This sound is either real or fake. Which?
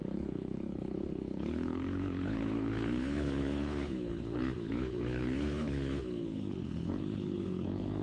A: fake